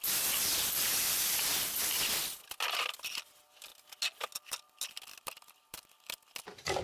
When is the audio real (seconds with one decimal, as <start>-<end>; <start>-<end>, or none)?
0.0-6.8